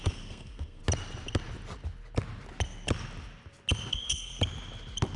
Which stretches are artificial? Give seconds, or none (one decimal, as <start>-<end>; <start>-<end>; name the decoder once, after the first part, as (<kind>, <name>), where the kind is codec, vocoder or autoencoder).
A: 0.0-0.8 (codec, SNAC); 3.9-4.3